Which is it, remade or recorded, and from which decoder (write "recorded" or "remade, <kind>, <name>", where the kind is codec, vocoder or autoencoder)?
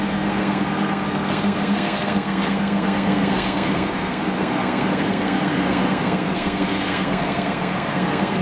remade, codec, SNAC